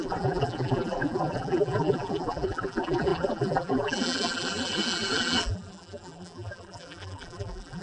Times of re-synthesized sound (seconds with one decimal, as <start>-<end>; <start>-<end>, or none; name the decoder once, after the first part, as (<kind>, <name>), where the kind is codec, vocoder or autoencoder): 0.0-7.8 (vocoder, BigVGAN v2)